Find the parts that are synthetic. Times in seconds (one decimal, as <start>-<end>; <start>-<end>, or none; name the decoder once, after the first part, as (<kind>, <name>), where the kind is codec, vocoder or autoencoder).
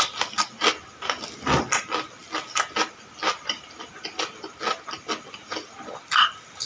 none